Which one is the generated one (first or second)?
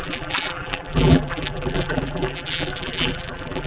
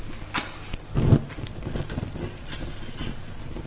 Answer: first